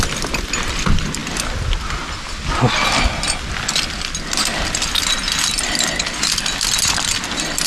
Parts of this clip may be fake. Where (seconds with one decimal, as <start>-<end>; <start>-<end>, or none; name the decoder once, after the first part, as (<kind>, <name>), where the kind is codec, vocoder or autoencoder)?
none